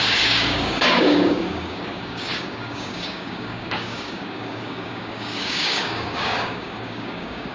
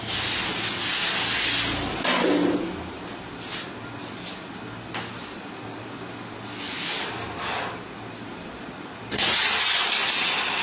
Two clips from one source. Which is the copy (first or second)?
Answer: first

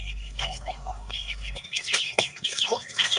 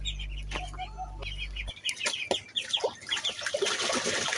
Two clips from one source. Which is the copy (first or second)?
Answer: first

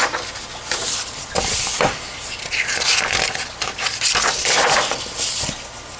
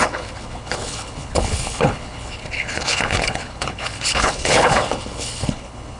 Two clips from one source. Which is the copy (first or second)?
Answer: second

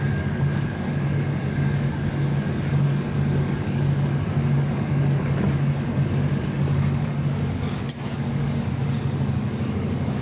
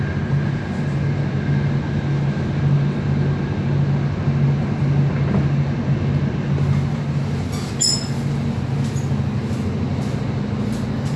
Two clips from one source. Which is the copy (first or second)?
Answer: first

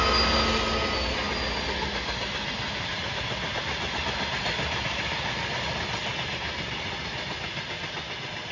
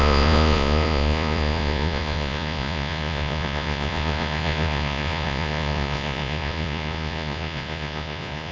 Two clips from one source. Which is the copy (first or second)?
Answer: second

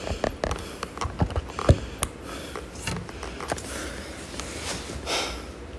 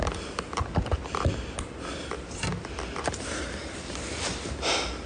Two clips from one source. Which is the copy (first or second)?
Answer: second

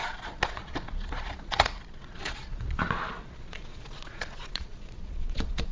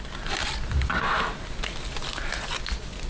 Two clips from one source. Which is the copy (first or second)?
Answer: first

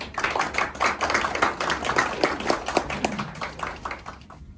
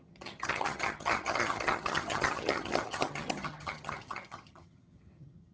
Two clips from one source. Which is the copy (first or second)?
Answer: second